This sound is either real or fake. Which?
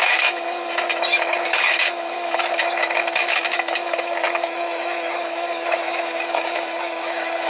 fake